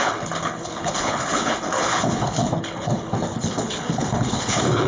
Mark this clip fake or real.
fake